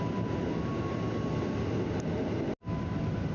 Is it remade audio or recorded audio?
recorded